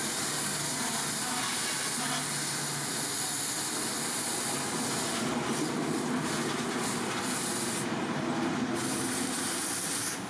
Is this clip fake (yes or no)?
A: no